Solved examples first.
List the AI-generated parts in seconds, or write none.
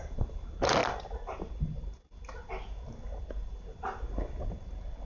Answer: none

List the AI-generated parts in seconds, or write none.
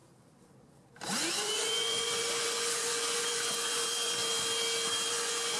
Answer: 1.3-4.2 (vocoder, Vocos); 5.1-5.6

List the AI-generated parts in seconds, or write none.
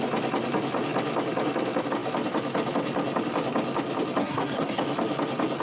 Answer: 4.2-4.8 (codec, SNAC)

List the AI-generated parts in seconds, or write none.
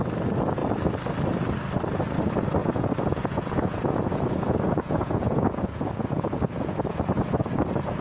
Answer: 2.6-7.4 (vocoder, Vocos)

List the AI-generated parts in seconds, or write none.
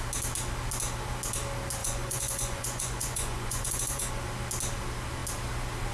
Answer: 1.8-4.1 (vocoder, Vocos)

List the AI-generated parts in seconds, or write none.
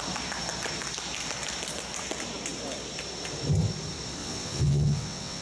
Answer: 4.2-5.4 (vocoder, WaveNeXt)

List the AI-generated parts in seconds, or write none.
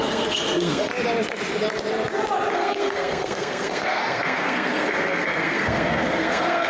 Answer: 0.0-0.9 (codec, SNAC); 2.5-6.7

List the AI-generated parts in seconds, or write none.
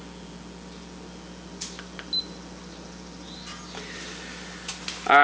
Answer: none